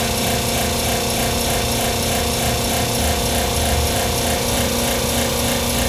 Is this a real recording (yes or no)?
yes